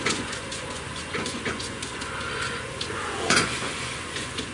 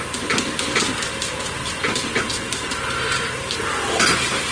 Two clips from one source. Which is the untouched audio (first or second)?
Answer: second